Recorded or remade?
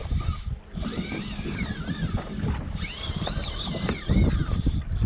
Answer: recorded